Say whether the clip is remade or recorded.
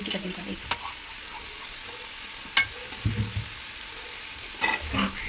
recorded